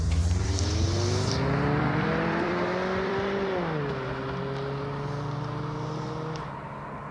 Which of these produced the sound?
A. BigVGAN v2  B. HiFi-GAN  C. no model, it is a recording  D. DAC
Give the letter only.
A